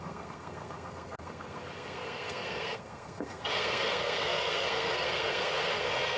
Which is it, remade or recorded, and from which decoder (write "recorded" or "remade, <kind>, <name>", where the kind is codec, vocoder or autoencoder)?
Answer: remade, codec, SNAC